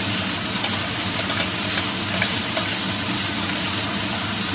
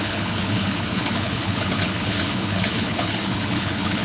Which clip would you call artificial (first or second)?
second